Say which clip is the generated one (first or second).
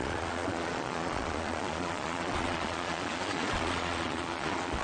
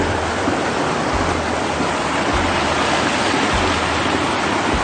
first